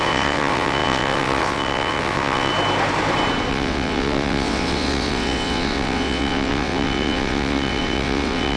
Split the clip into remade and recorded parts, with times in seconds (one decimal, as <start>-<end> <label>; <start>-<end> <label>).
0.0-2.5 remade; 2.5-3.5 recorded; 3.5-8.6 remade